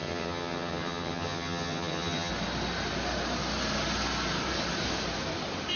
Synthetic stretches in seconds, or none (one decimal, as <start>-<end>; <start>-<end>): 0.0-2.3